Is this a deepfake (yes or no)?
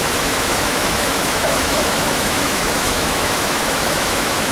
yes